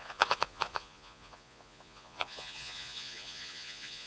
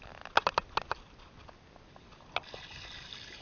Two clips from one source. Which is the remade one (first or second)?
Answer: first